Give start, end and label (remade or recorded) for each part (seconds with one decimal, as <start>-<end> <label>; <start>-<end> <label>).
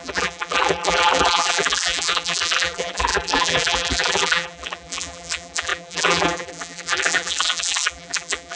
0.0-8.6 remade